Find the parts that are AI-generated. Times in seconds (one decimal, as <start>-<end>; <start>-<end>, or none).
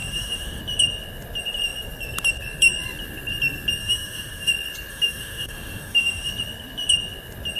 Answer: 0.0-0.6; 3.8-4.5; 4.9-6.3